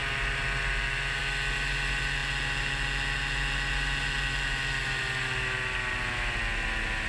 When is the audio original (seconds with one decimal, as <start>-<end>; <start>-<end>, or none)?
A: 0.0-7.1